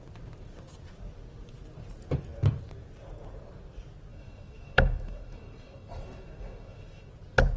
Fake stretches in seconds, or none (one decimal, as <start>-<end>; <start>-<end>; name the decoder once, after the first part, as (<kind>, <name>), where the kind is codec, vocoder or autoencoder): 4.1-7.1 (autoencoder, DAC-VAE)